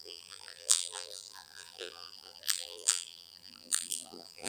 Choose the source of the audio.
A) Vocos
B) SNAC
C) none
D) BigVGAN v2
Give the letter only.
D